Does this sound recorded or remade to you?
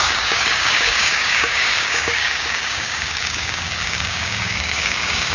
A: remade